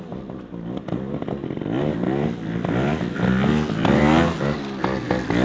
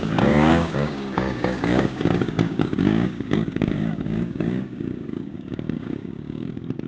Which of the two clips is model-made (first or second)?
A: second